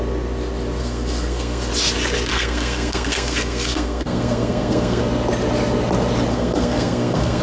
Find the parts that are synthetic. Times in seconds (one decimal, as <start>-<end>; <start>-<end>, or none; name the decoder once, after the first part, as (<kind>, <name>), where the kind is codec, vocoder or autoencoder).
0.8-1.7 (codec, SNAC); 2.3-5.0; 6.3-7.4